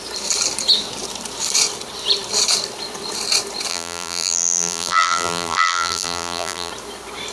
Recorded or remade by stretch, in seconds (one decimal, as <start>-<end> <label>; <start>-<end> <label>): 0.0-3.7 recorded; 3.7-6.7 remade; 6.7-7.3 recorded